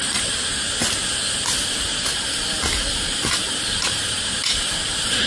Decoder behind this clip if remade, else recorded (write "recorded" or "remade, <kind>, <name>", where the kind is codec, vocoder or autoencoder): recorded